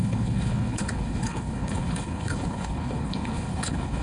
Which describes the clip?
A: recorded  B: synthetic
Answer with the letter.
B